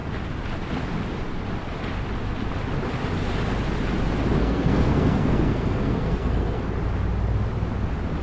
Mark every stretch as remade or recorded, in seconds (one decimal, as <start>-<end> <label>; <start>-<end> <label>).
0.0-4.4 recorded; 4.4-6.6 remade; 6.6-8.2 recorded